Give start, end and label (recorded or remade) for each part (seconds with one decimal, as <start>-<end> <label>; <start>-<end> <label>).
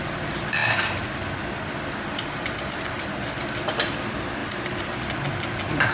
0.0-5.9 recorded